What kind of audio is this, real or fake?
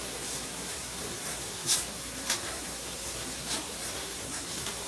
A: fake